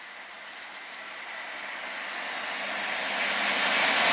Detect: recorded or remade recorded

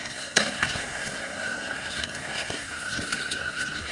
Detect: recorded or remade remade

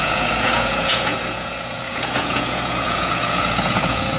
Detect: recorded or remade remade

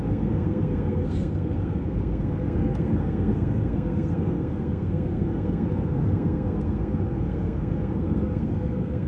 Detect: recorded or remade remade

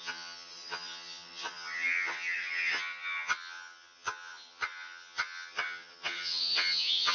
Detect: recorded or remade remade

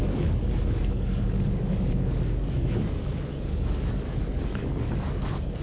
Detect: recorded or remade remade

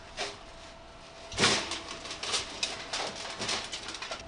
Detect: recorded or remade recorded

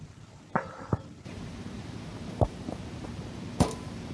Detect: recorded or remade remade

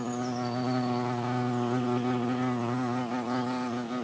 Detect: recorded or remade recorded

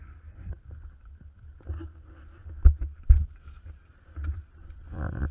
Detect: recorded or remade recorded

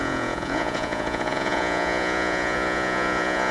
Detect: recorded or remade remade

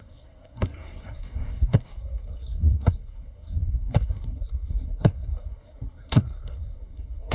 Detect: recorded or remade remade